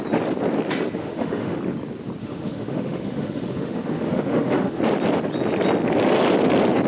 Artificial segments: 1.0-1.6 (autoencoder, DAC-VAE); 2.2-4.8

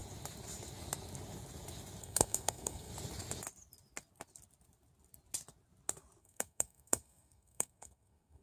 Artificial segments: 2.0-2.9 (codec, SNAC); 6.2-8.4

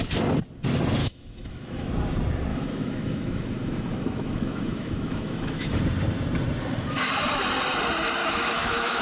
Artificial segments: 1.0-1.9 (autoencoder, DAC-VAE); 2.5-5.8; 8.2-9.0

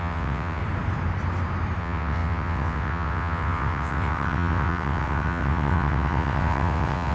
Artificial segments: 0.0-0.6 (vocoder, WaveNeXt); 1.8-7.1

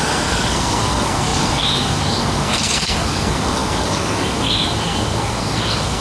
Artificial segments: 0.0-6.0 (codec, SNAC)